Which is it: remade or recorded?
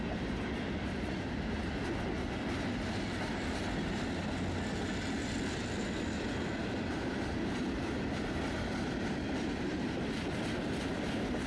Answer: recorded